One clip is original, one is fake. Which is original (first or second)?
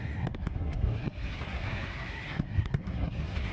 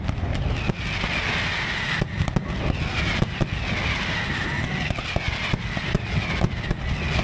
second